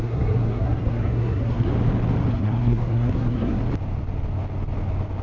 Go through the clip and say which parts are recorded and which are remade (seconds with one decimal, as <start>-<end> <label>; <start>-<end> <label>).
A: 0.0-1.7 remade; 1.7-2.3 recorded; 2.3-3.6 remade; 3.6-5.2 recorded